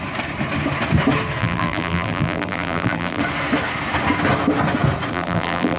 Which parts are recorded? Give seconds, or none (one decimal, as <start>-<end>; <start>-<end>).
0.0-1.4; 3.2-5.1